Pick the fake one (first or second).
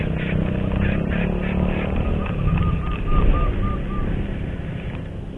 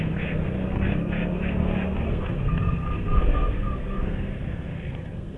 second